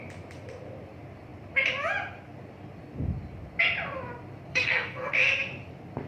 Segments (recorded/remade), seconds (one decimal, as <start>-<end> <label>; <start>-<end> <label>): 0.0-4.5 recorded; 4.5-5.1 remade; 5.1-6.1 recorded